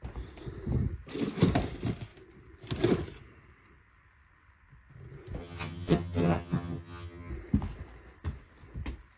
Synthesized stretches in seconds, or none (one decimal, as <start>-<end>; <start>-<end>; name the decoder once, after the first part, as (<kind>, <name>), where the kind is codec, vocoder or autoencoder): 5.4-7.3 (vocoder, HiFi-GAN)